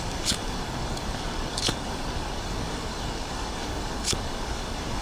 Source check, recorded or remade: remade